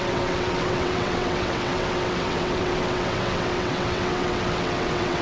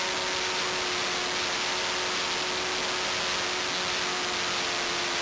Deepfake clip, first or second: first